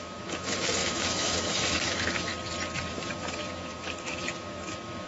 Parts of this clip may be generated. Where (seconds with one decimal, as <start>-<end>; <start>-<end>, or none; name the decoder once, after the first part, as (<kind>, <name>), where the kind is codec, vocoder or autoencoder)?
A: 0.0-2.3 (autoencoder, DAC-VAE); 2.9-5.1